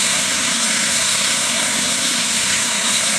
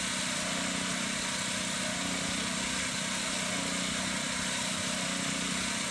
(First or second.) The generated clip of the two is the first